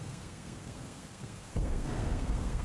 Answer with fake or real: fake